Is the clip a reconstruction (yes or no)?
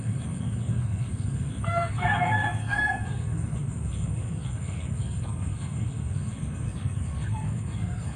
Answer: yes